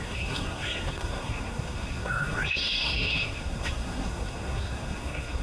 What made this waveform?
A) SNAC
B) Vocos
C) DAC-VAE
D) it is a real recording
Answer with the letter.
A